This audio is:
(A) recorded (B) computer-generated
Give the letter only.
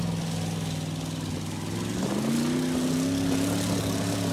A